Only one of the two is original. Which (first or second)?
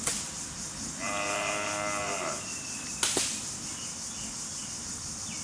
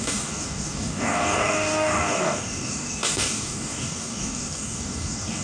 first